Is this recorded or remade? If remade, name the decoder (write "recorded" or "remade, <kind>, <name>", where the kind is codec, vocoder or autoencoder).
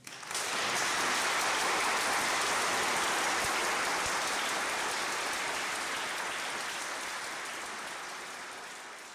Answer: recorded